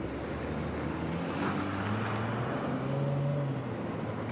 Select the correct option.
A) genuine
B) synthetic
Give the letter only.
A